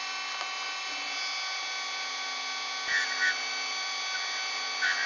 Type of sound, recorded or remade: recorded